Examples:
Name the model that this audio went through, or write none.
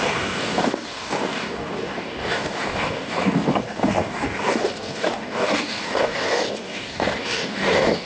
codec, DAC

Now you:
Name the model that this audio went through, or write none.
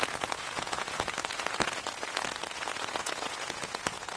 vocoder, Vocos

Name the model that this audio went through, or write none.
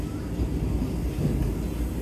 none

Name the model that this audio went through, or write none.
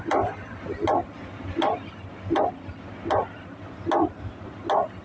none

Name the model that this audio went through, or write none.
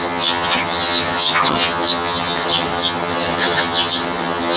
vocoder, HiFi-GAN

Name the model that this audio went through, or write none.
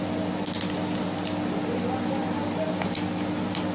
none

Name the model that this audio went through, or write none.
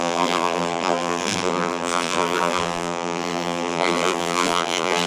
vocoder, BigVGAN v2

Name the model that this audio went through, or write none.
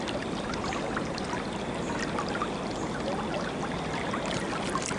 none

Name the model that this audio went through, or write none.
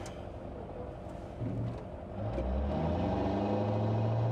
none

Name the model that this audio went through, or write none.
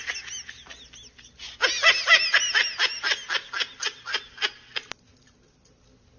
none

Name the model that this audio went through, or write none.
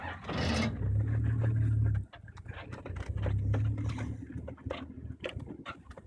none